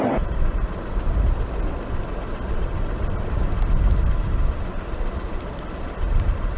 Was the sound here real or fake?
real